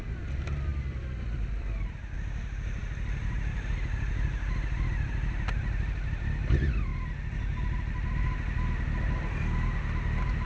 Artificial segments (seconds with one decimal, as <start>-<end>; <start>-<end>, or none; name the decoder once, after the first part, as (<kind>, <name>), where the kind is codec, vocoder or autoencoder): none